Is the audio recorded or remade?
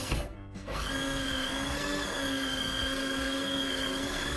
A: remade